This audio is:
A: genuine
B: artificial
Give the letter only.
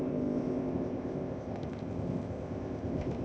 B